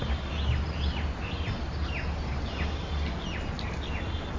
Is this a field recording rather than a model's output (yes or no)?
yes